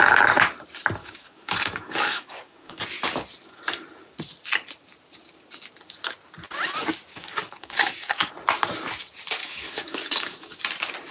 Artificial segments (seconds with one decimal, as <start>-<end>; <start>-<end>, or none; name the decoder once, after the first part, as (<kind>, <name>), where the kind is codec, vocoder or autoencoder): 1.0-2.8 (codec, DAC); 7.1-8.3; 9.4-10.6